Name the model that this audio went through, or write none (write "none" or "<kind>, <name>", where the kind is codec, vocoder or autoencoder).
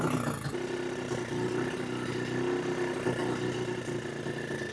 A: none